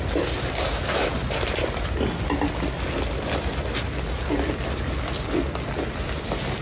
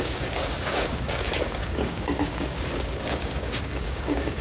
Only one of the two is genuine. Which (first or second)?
first